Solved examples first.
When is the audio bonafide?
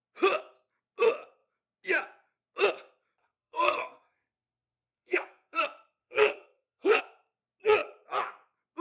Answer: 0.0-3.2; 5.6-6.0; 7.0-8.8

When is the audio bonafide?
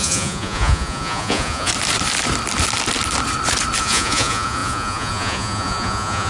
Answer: 1.7-3.8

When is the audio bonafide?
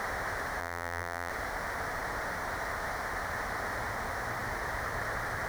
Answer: 0.0-0.6; 1.3-5.5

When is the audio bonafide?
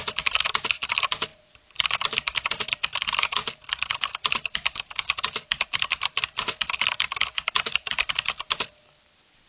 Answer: 1.3-2.0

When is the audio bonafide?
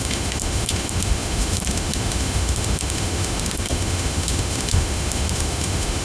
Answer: none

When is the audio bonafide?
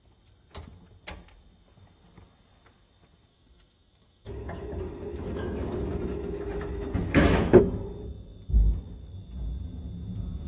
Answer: 0.0-3.3; 7.6-10.5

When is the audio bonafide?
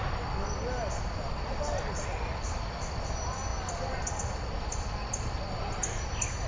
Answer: 0.0-6.5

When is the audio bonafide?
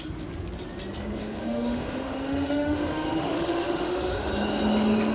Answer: 0.0-1.2; 4.3-5.1